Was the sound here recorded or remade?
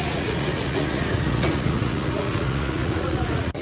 remade